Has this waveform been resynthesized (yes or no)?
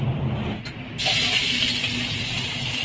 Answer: no